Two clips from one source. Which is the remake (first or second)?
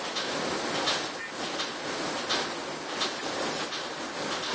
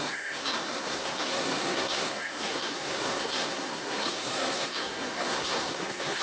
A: second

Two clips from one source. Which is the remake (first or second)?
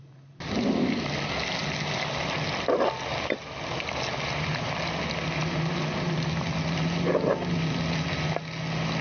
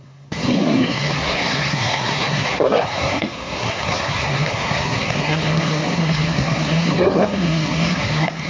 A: second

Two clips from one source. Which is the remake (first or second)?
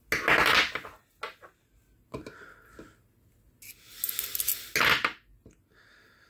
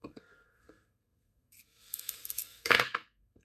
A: second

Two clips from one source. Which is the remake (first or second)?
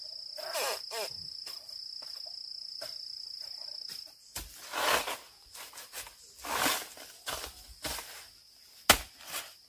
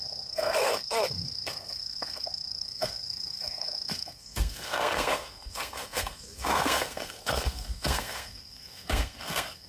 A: second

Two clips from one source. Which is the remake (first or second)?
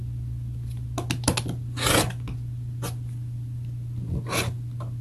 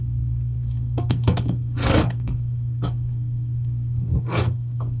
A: second